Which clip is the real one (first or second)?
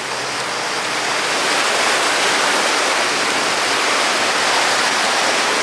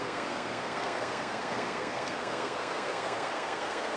first